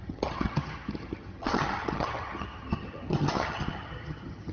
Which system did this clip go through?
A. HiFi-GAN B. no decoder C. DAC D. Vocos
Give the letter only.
A